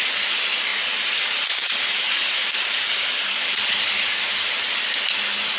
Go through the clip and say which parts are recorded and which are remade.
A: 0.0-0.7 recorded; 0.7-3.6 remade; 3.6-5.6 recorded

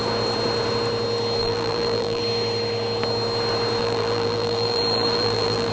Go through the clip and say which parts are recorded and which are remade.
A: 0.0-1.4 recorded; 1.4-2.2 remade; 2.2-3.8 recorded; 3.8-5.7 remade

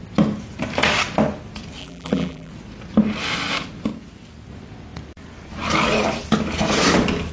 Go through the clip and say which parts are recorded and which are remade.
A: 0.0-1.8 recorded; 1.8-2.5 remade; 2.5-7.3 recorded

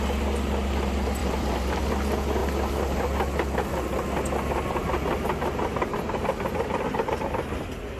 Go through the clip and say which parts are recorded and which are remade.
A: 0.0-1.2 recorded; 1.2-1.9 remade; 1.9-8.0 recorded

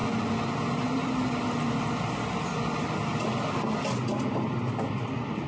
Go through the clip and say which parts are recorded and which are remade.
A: 0.0-5.5 recorded